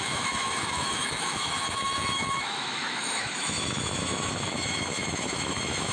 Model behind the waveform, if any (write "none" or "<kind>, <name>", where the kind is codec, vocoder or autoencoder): autoencoder, DAC-VAE